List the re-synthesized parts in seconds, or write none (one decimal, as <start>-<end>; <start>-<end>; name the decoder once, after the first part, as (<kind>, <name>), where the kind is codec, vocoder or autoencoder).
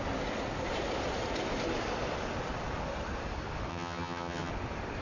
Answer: 3.7-4.5 (vocoder, HiFi-GAN)